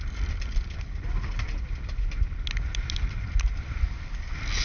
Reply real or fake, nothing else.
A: real